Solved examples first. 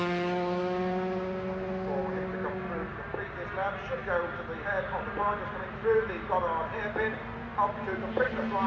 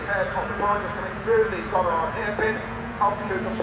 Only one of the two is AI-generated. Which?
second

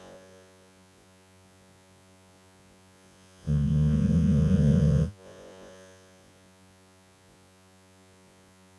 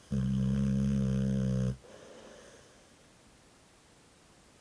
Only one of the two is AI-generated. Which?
first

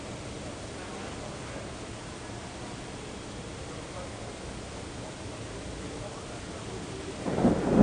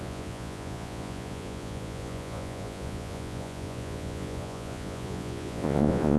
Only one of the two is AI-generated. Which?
second